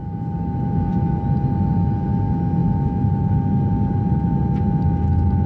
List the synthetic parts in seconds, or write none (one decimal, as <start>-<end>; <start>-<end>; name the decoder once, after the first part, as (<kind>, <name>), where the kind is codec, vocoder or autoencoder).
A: none